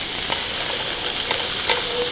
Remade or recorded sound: recorded